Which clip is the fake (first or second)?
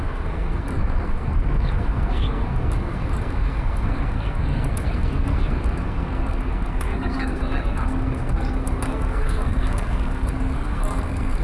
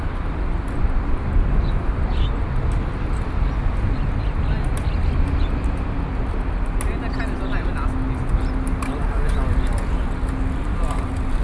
first